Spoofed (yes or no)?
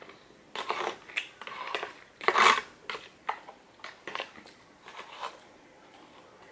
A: no